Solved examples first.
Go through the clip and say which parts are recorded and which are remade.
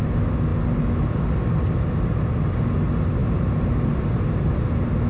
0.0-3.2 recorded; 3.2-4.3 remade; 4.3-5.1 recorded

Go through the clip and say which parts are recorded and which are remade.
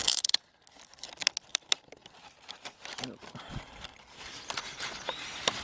0.0-1.5 recorded; 1.5-2.5 remade; 2.5-3.2 recorded; 3.2-5.6 remade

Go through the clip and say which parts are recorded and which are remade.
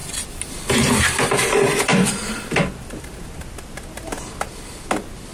0.0-1.9 remade; 1.9-5.3 recorded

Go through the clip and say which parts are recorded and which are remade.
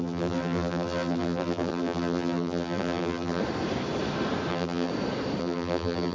0.0-3.4 remade; 3.4-4.5 recorded; 4.5-4.9 remade; 4.9-5.4 recorded; 5.4-6.1 remade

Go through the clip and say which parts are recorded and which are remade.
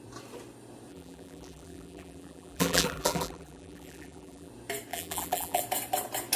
0.0-0.9 recorded; 0.9-4.5 remade; 4.5-4.9 recorded; 4.9-5.6 remade; 5.6-6.4 recorded